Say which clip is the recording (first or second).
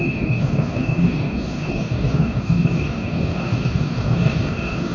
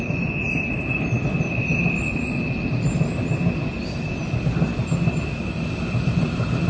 second